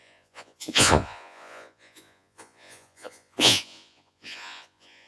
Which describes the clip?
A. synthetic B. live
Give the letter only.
A